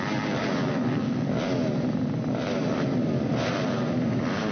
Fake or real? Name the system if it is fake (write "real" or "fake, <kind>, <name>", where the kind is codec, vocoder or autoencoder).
fake, vocoder, BigVGAN v2